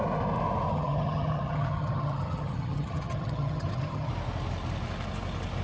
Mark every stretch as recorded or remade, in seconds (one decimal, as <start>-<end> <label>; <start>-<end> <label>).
0.0-0.7 recorded; 0.7-4.1 remade; 4.1-5.6 recorded